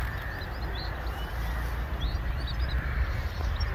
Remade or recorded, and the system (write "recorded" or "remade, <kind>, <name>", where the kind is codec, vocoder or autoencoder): recorded